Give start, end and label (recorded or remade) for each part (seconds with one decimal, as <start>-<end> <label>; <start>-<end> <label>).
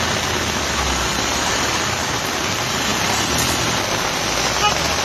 0.0-5.0 recorded